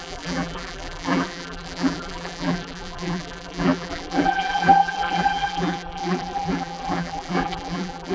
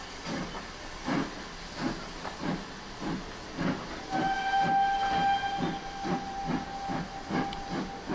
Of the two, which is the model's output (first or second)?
first